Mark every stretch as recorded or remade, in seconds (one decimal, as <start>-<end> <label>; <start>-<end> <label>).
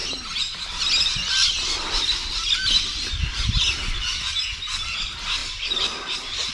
0.0-5.4 recorded; 5.4-6.5 remade